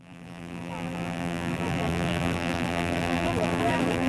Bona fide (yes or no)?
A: no